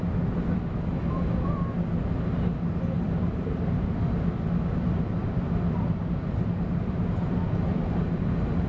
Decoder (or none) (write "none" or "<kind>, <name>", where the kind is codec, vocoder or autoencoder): none